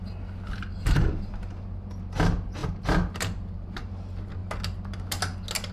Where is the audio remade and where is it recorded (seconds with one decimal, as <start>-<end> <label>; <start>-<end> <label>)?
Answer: 0.0-0.7 recorded; 0.7-1.3 remade; 1.3-2.6 recorded; 2.6-3.8 remade; 3.8-5.7 recorded